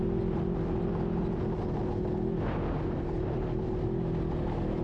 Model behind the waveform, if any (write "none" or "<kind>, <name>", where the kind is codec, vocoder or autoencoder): none